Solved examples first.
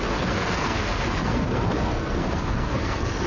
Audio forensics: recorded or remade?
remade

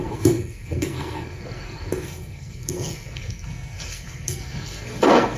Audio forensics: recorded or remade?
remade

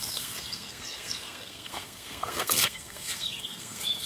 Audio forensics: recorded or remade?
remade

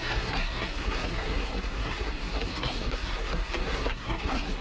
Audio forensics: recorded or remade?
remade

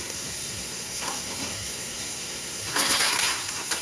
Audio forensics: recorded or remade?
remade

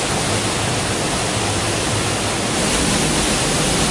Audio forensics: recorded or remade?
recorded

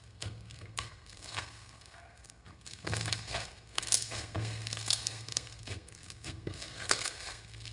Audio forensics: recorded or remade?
remade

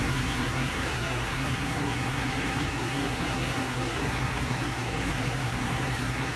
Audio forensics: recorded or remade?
remade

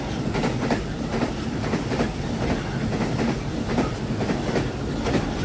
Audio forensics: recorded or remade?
recorded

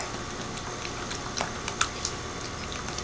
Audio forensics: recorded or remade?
recorded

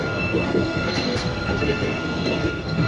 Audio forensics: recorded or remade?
remade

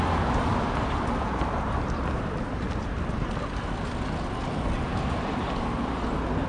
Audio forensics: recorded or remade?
recorded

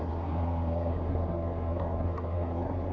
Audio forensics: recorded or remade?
remade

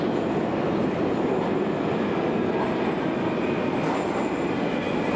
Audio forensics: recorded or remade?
recorded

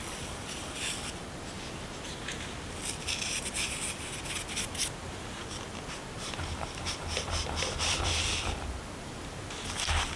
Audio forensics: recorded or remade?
recorded